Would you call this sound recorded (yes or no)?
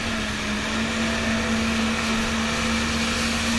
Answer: yes